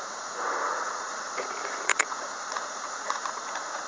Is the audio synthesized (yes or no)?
yes